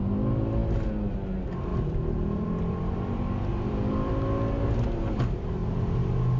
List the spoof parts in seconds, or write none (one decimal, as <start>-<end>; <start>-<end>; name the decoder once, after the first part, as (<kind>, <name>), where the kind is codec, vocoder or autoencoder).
1.7-4.1 (vocoder, BigVGAN v2)